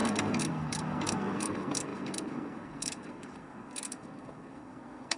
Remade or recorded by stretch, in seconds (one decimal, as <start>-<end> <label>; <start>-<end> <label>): 0.0-5.2 remade

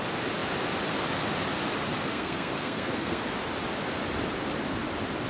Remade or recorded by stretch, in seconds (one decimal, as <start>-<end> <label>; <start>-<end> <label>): 0.0-2.1 recorded; 2.1-3.2 remade; 3.2-5.3 recorded

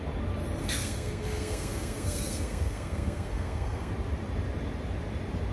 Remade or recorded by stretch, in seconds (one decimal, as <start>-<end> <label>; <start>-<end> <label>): 0.0-0.6 recorded; 0.6-3.9 remade; 3.9-5.5 recorded

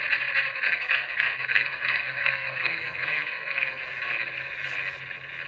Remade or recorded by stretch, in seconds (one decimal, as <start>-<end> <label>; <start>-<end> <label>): 0.0-0.5 recorded; 0.5-3.8 remade; 3.8-5.5 recorded

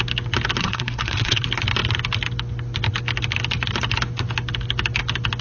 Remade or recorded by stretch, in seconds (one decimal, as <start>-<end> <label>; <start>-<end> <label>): 0.0-0.6 recorded; 0.6-1.4 remade; 1.4-5.4 recorded

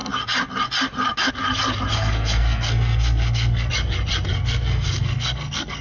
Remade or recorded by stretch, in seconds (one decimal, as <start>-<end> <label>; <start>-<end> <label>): 0.0-1.9 recorded; 1.9-3.7 remade; 3.7-4.3 recorded; 4.3-5.8 remade

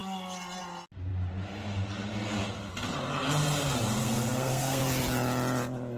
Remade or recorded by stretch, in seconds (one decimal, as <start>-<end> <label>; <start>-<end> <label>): 0.0-4.0 recorded; 4.0-4.8 remade; 4.8-6.0 recorded